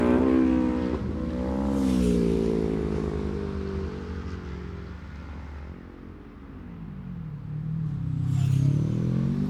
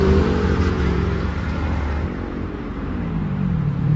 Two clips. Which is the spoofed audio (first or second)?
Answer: second